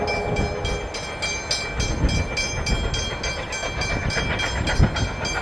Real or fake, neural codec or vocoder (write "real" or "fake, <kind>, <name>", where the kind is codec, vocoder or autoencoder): real